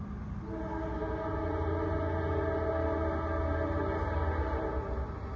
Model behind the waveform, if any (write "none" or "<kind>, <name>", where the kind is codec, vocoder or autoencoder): none